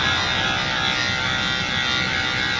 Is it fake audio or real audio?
real